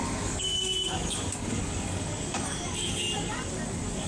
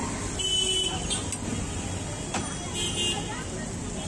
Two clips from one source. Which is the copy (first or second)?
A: first